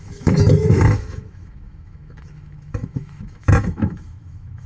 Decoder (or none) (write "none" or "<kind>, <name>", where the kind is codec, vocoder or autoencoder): autoencoder, DAC-VAE